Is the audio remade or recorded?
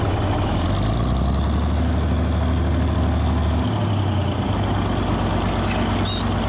recorded